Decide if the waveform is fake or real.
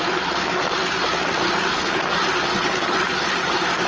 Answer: real